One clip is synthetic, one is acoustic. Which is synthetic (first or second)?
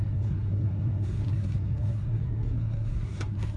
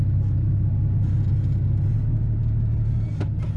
first